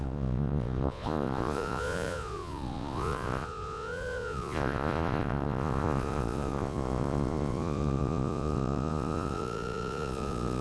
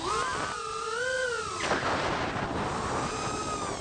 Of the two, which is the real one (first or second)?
second